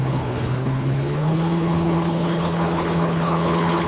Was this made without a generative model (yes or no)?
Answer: no